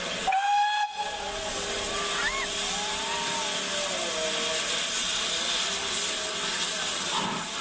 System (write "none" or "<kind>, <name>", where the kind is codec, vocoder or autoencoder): none